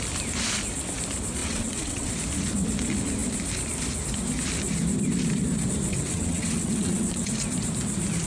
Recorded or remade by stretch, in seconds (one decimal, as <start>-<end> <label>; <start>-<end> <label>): 0.0-1.4 recorded; 1.4-2.1 remade; 2.1-5.9 recorded; 5.9-7.3 remade; 7.3-8.3 recorded